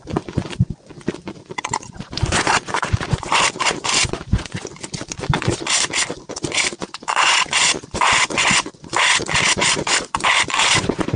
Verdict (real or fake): fake